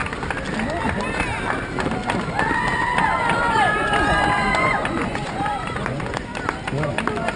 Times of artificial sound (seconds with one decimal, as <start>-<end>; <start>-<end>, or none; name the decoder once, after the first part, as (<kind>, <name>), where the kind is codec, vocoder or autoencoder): 3.5-6.3 (vocoder, Vocos)